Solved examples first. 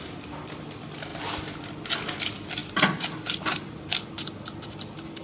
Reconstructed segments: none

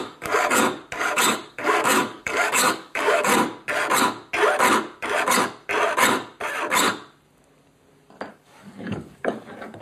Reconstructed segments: 0.0-0.6 (codec, DAC); 1.2-3.3; 8.3-9.8

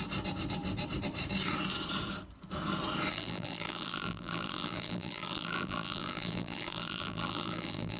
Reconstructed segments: 3.1-8.0 (vocoder, BigVGAN v2)

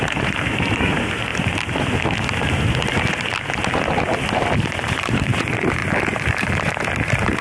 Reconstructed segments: 0.0-1.3 (vocoder, BigVGAN v2); 4.6-7.4

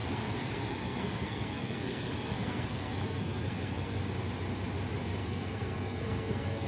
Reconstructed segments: 0.0-4.0 (codec, SNAC); 5.2-6.7

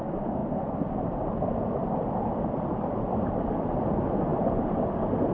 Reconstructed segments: 0.4-3.6 (vocoder, BigVGAN v2); 4.3-5.3